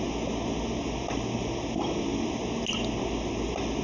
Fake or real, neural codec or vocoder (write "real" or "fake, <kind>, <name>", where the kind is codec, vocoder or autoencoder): real